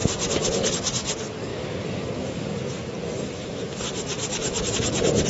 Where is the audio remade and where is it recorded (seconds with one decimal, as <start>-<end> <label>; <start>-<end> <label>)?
0.0-5.3 recorded